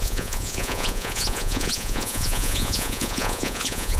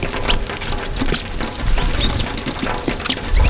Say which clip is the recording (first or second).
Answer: second